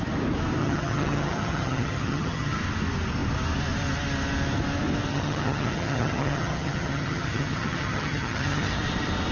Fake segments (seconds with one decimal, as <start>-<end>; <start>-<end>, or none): 0.6-2.6; 5.1-8.8